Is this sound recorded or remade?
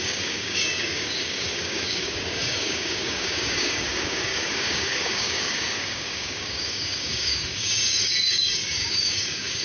remade